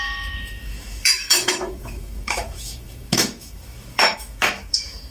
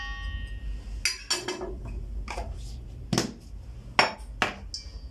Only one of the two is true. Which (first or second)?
second